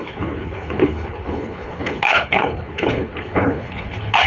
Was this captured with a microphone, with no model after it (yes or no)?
no